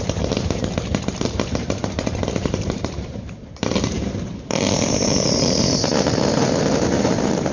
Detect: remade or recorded remade